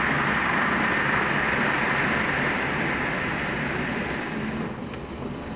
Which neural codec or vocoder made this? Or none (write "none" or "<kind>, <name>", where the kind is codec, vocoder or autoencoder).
none